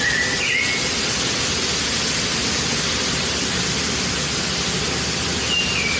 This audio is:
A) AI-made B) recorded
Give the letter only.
B